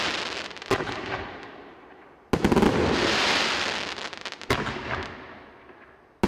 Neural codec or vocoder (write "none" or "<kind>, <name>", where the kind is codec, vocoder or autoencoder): none